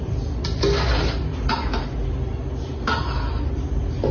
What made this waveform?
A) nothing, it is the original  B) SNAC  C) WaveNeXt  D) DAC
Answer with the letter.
A